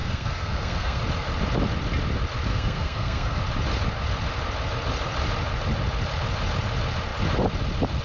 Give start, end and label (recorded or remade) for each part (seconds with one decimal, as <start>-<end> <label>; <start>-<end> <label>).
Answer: 0.0-1.0 remade; 1.0-2.5 recorded; 2.5-3.4 remade; 3.4-8.0 recorded